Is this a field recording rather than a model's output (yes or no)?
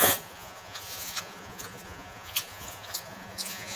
no